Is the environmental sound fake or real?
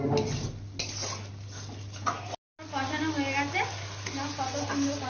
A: real